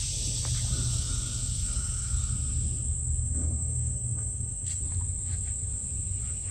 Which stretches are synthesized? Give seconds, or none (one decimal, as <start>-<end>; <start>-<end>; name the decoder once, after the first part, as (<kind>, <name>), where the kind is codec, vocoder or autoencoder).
0.9-2.3 (codec, SNAC); 3.2-4.8